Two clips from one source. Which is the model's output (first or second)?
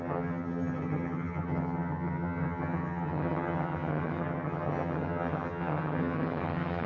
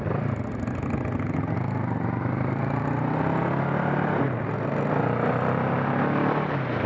first